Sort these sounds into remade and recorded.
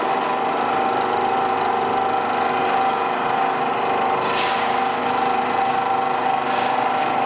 recorded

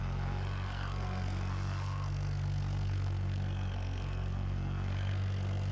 remade